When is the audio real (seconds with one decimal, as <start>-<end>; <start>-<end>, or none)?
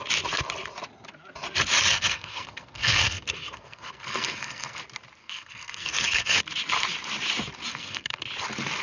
0.0-1.9; 4.8-5.2; 6.4-7.7; 8.2-8.8